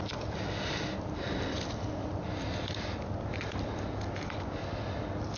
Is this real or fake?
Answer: real